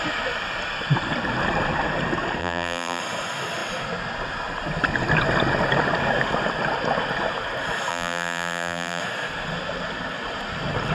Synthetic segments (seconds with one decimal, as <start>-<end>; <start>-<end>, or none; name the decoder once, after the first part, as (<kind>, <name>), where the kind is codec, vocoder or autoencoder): 2.4-3.0 (vocoder, BigVGAN v2); 7.9-9.0